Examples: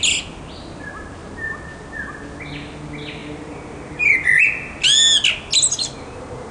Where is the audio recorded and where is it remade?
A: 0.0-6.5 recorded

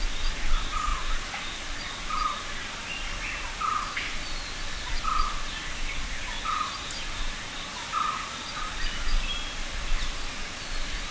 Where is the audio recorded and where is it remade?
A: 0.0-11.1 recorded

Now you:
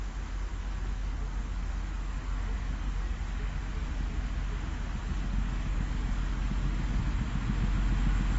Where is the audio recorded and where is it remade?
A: 0.0-0.5 recorded; 0.5-3.9 remade; 3.9-5.0 recorded; 5.0-7.0 remade; 7.0-8.4 recorded

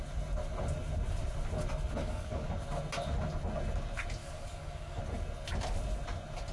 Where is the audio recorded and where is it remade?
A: 0.0-2.0 recorded; 2.0-2.5 remade; 2.5-4.2 recorded; 4.2-5.0 remade; 5.0-6.5 recorded